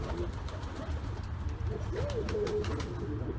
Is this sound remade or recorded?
remade